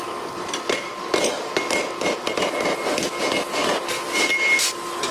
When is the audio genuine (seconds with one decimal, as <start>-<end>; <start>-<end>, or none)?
0.0-5.1